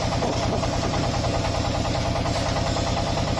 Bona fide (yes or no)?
yes